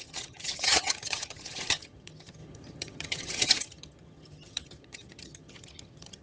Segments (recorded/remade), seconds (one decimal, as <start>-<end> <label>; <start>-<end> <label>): 0.0-6.2 remade